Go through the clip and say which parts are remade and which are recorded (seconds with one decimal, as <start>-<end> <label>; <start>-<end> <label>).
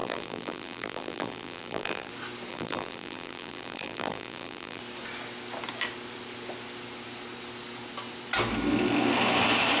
0.0-2.1 remade; 2.1-2.5 recorded; 2.5-4.8 remade; 4.8-9.8 recorded